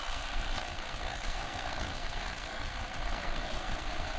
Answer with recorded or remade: remade